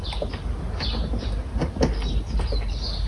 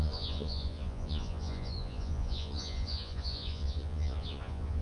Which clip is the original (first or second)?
first